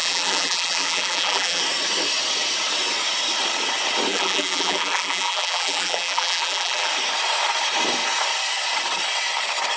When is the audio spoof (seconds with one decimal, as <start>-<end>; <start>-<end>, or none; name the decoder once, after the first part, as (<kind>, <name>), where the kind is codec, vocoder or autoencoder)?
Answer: 0.0-1.6 (vocoder, BigVGAN v2); 4.1-6.9